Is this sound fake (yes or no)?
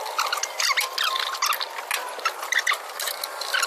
no